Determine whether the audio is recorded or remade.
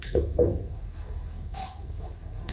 remade